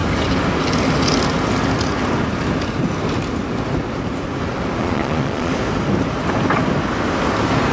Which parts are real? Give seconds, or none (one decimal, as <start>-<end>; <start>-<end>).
0.0-4.8; 5.5-7.7